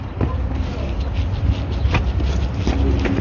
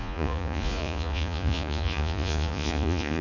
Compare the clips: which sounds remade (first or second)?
second